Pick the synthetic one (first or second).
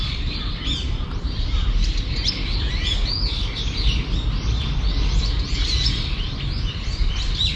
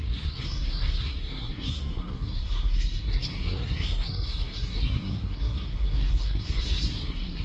second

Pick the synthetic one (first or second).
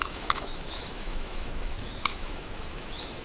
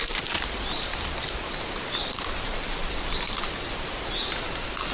first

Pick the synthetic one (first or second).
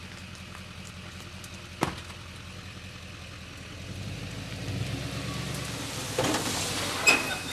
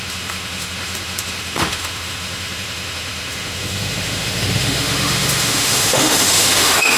second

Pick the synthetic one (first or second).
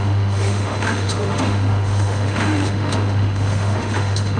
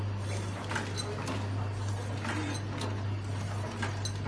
first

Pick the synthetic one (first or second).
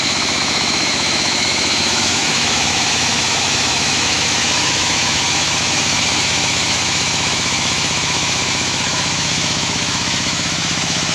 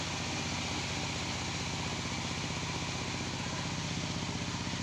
first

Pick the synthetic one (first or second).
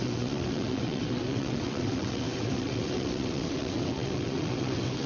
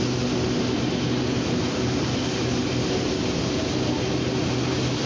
first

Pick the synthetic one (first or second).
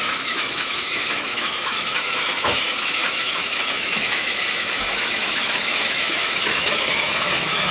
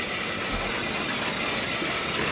first